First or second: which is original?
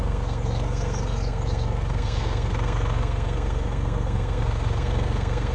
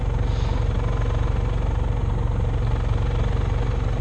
second